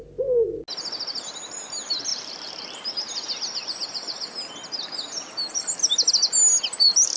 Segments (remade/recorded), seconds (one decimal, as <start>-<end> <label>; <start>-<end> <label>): 0.0-7.2 recorded